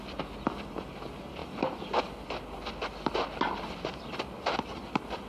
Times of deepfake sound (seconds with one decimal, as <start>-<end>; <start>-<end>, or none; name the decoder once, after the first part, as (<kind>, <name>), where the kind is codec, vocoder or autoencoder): none